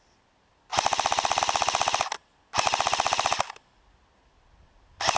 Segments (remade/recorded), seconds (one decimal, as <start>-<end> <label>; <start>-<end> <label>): 0.0-5.2 recorded